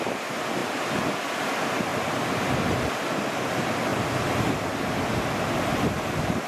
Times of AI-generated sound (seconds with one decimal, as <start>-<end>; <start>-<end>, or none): none